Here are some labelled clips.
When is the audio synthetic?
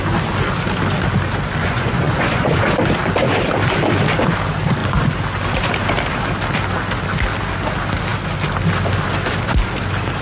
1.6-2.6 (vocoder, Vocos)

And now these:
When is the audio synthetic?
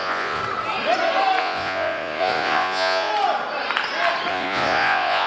0.0-0.4 (vocoder, Vocos); 1.4-3.1; 4.3-5.3